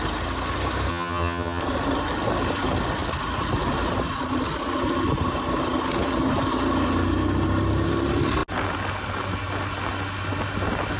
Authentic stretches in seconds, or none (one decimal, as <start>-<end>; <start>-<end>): 0.0-0.9; 1.6-11.0